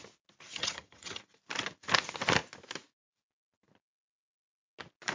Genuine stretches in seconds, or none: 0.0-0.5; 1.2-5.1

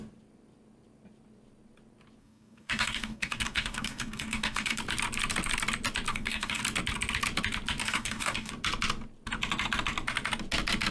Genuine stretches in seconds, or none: 0.0-2.2; 4.8-6.1; 6.6-7.8; 8.5-10.9

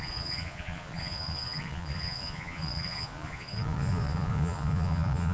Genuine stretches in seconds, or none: none

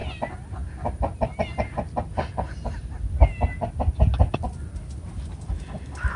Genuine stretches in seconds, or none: 0.0-6.2

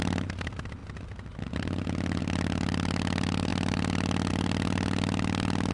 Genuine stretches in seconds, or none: 0.0-5.7

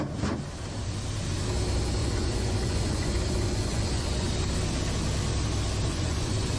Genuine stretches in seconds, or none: 0.0-2.0; 4.3-5.9

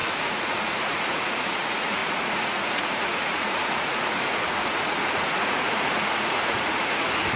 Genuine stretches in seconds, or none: none